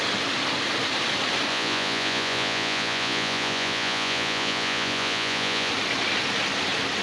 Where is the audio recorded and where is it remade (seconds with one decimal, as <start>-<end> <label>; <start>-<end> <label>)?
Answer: 0.0-1.5 recorded; 1.5-5.7 remade; 5.7-7.0 recorded